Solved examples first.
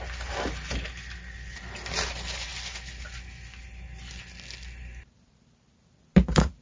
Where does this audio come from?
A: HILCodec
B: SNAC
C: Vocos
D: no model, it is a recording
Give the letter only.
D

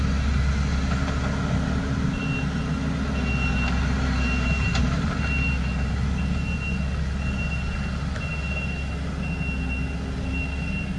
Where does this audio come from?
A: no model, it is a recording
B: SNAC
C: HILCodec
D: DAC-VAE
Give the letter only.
A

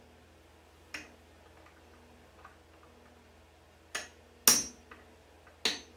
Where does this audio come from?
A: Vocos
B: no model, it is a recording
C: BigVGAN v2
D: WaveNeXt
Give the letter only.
B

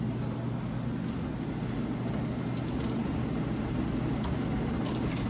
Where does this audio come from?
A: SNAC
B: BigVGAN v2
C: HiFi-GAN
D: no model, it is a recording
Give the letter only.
D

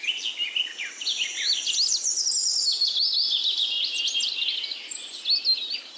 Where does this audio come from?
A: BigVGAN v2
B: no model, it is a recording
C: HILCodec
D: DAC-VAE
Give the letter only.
B